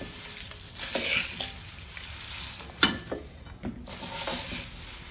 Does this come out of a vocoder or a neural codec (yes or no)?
no